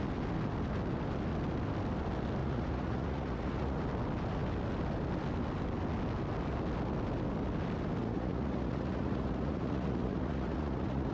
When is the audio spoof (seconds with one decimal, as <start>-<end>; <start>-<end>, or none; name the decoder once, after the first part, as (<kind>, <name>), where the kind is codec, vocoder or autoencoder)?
2.4-3.8 (vocoder, Vocos); 8.0-11.1